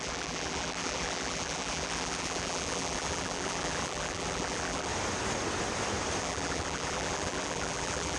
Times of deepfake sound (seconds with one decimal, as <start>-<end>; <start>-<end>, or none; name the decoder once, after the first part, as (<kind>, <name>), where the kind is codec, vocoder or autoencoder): 0.0-4.9 (vocoder, BigVGAN v2); 6.2-8.2